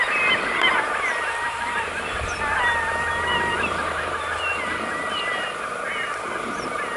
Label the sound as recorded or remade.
recorded